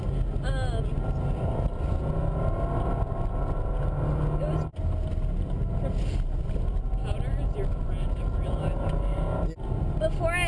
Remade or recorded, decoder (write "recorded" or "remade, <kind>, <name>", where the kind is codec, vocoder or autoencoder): recorded